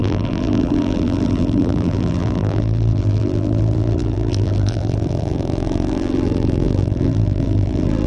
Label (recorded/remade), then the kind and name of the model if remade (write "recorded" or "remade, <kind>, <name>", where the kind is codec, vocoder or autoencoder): remade, vocoder, BigVGAN v2